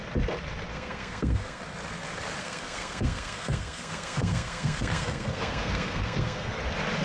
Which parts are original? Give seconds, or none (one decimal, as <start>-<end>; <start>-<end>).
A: 0.0-0.7; 1.6-2.4; 6.6-7.0